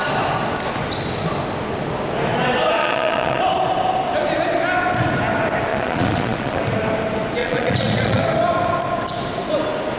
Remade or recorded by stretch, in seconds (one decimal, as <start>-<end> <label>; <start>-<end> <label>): 0.0-2.8 recorded; 2.8-3.4 remade; 3.4-5.7 recorded; 5.7-6.6 remade; 6.6-7.4 recorded; 7.4-8.2 remade; 8.2-10.0 recorded